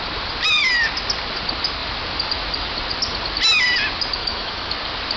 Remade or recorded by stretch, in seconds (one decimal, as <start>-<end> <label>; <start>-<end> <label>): 0.0-4.2 recorded; 4.2-4.7 remade; 4.7-5.2 recorded